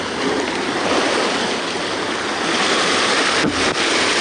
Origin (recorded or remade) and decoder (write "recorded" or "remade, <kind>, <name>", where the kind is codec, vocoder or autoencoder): recorded